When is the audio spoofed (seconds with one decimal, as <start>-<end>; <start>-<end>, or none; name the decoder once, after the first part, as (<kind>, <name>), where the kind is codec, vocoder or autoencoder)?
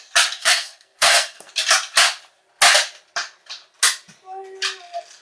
0.4-1.5 (codec, SNAC)